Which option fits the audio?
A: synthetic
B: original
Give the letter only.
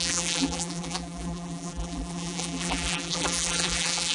A